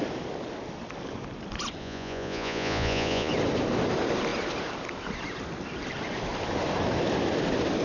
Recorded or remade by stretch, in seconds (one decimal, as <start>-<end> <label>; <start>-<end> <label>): 0.0-1.8 recorded; 1.8-3.3 remade; 3.3-7.8 recorded